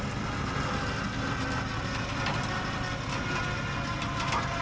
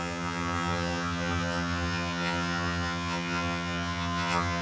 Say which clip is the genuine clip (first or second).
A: first